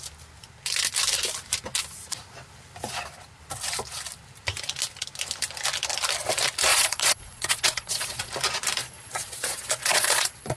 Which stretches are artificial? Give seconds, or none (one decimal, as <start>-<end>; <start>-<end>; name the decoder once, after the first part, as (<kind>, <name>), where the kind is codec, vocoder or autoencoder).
6.7-8.3 (vocoder, Vocos); 8.8-10.6